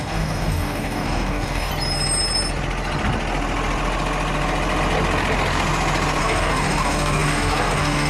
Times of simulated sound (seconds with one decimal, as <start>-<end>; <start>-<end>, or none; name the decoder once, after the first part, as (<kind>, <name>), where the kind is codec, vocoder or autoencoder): 0.0-1.7 (codec, DAC); 6.2-8.1